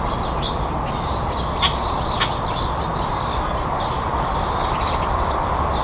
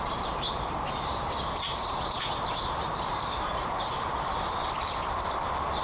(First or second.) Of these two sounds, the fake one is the second